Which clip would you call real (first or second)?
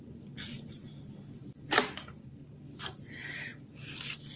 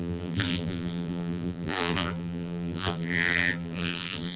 first